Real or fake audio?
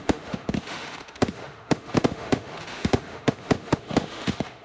fake